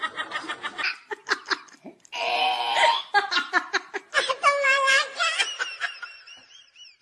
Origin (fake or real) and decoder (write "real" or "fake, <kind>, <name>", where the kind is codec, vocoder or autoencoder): fake, vocoder, BigVGAN v2